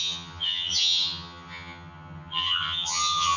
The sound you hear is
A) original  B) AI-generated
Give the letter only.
B